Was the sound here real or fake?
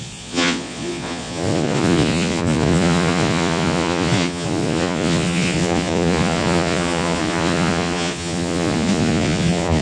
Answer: fake